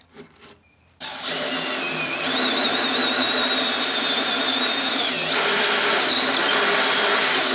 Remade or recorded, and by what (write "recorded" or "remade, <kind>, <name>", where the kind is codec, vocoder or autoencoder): remade, vocoder, BigVGAN v2